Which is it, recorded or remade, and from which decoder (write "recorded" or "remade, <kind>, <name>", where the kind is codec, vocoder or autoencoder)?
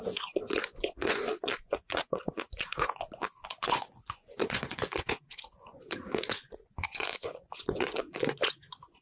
remade, vocoder, Vocos